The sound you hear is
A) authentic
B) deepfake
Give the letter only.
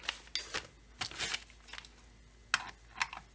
A